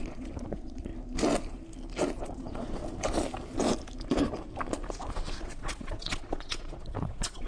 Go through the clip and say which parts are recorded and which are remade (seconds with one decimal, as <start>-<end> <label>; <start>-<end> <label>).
0.0-0.9 remade; 0.9-2.2 recorded; 2.2-2.8 remade; 2.8-5.4 recorded; 5.4-7.5 remade